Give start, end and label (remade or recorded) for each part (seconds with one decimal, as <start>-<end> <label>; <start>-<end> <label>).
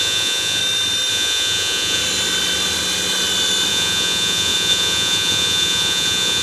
0.0-0.6 remade; 0.6-1.1 recorded; 1.1-2.0 remade; 2.0-3.7 recorded; 3.7-6.4 remade